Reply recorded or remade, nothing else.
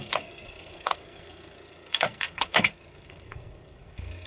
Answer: remade